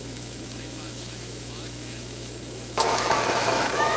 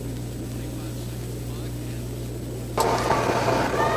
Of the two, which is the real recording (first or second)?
second